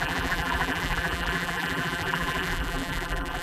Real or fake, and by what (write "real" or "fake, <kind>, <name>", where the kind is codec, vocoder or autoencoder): fake, vocoder, BigVGAN v2